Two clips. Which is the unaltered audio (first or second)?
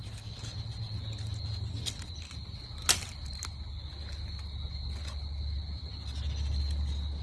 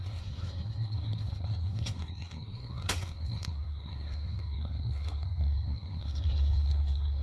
first